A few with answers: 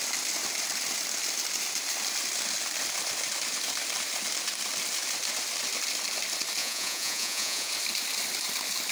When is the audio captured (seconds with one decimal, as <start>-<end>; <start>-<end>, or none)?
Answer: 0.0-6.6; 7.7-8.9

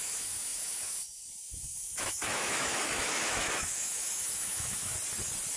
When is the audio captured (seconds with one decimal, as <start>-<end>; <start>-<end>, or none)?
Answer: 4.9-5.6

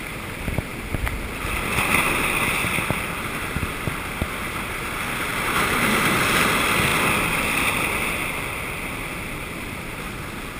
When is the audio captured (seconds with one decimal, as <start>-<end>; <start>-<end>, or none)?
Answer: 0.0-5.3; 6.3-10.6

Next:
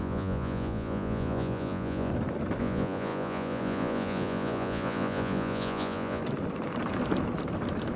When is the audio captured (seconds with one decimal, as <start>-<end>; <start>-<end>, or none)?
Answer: 2.1-2.6; 6.2-8.0